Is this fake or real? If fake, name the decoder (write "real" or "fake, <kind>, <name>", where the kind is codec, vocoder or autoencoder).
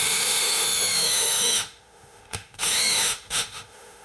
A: fake, autoencoder, DAC-VAE